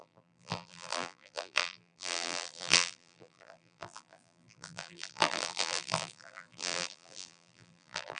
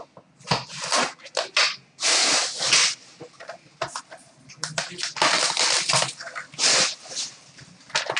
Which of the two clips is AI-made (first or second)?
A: first